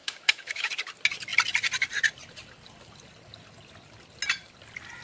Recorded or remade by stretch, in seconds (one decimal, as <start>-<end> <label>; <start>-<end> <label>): 0.0-0.7 remade; 0.7-5.0 recorded